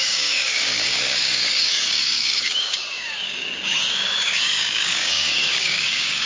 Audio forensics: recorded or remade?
remade